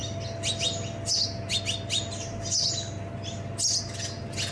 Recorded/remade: recorded